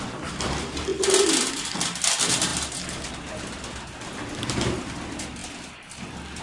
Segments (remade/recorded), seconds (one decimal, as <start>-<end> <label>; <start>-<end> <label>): 0.0-6.4 recorded

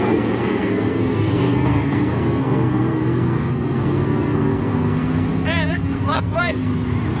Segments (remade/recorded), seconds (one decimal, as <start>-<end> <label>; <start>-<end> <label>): 0.0-6.7 remade; 6.7-7.2 recorded